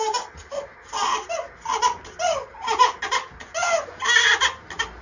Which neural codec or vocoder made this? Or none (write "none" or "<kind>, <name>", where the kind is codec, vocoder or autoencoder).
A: none